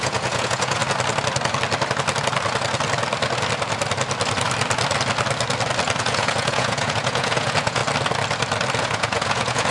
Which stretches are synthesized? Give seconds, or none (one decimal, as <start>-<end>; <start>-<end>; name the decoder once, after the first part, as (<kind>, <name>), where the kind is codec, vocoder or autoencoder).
0.0-0.8 (vocoder, Vocos); 6.0-7.8; 8.8-9.7